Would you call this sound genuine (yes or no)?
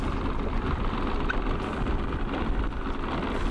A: yes